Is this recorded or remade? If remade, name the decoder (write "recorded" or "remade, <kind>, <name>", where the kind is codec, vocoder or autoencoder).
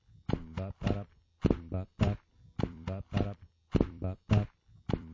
remade, vocoder, BigVGAN v2